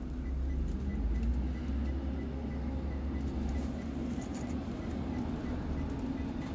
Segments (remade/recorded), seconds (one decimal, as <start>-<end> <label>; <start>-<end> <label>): 0.0-6.5 recorded